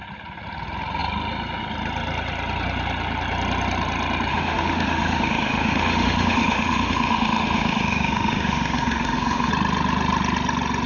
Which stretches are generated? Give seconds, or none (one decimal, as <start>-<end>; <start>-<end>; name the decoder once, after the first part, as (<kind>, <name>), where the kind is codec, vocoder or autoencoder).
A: 4.3-9.5 (autoencoder, DAC-VAE)